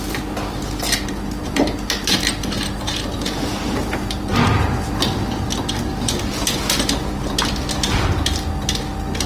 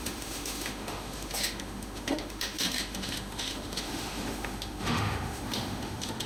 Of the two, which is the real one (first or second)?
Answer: first